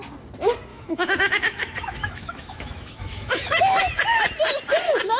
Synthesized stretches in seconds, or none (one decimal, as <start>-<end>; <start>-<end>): 0.7-3.8